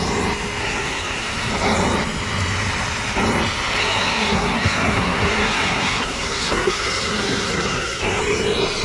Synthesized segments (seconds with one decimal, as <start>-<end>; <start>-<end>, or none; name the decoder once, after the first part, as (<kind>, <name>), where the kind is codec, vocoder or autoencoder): 0.6-1.5 (codec, SNAC); 3.8-8.2